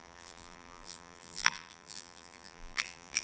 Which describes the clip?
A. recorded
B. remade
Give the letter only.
B